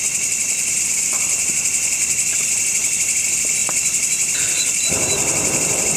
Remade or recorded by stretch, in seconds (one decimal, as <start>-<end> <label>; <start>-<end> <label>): 0.0-6.0 recorded